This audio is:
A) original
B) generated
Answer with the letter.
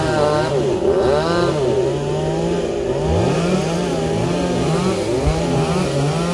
A